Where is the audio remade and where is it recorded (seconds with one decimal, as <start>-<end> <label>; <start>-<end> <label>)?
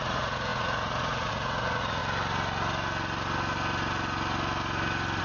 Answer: 0.0-2.0 remade; 2.0-5.2 recorded